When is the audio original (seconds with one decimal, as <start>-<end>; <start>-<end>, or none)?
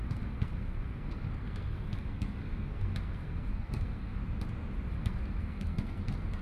4.2-4.9